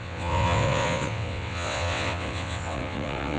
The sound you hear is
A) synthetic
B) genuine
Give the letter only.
A